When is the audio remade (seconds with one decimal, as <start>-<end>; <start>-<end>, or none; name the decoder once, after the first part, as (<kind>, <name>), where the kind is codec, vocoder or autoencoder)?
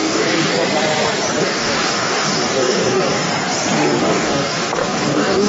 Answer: 0.0-0.5 (codec, DAC); 1.4-3.3; 4.0-5.5